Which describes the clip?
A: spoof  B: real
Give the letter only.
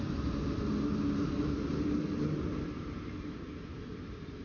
B